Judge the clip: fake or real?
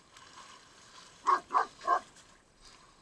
real